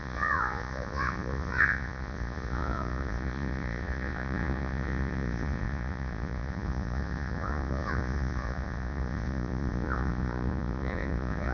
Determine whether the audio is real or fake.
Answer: fake